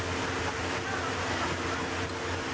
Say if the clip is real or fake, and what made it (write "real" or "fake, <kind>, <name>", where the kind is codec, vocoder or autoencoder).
real